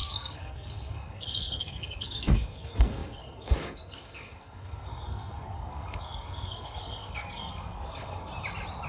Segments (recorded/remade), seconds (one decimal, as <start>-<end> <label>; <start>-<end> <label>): 0.0-8.3 remade; 8.3-8.9 recorded